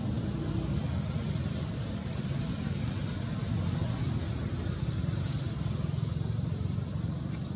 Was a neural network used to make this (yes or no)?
no